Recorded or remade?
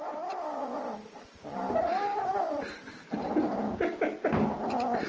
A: recorded